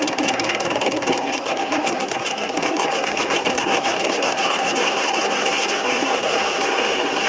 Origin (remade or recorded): remade